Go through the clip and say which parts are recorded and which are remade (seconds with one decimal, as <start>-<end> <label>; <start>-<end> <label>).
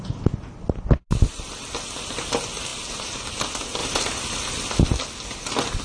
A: 0.0-3.8 recorded; 3.8-4.8 remade; 4.8-5.8 recorded